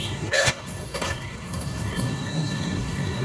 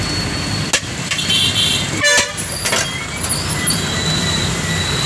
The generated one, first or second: first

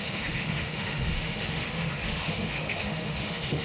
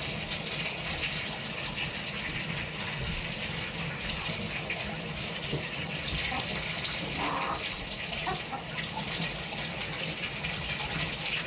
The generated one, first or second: first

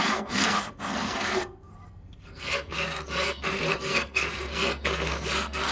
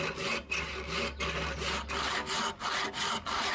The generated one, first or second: first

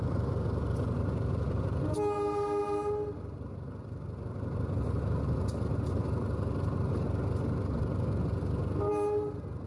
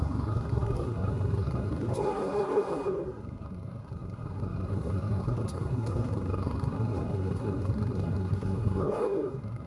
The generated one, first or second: second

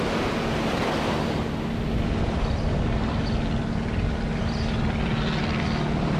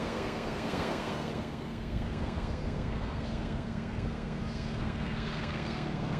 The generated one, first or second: second